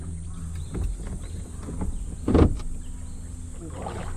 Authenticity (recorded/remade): recorded